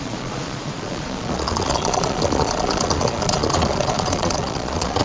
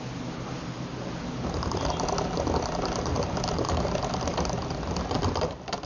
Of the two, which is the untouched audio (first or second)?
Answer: second